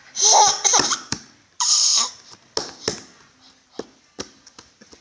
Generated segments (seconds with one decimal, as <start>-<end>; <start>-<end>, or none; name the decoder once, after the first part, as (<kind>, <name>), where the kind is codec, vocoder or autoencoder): 0.0-1.9 (vocoder, BigVGAN v2); 4.5-5.0